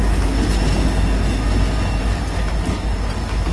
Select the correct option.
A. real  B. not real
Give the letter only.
A